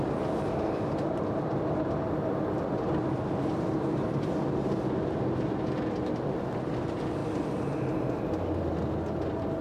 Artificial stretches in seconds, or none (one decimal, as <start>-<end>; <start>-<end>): none